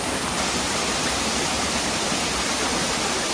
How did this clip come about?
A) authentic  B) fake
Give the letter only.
A